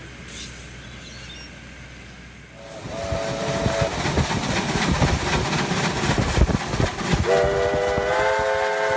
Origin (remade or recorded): recorded